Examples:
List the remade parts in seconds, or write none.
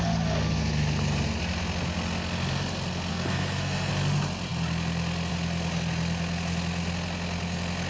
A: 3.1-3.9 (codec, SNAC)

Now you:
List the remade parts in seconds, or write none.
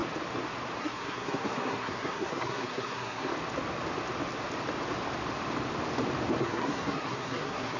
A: 0.8-3.3 (codec, SNAC); 6.4-7.8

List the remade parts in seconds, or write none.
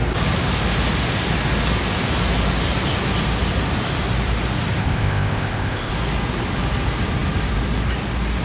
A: 4.8-5.9 (codec, ZipCodec)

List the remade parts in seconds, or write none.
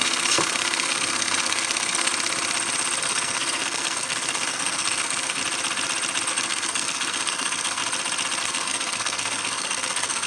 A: 0.0-2.1 (codec, SNAC); 3.0-5.4; 6.3-7.8; 8.4-10.3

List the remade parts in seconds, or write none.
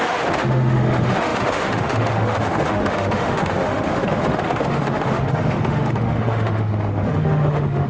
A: 0.0-7.9 (autoencoder, DAC-VAE)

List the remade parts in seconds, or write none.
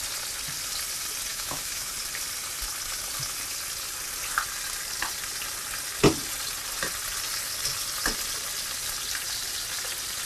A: 1.3-1.9 (autoencoder, DAC-VAE)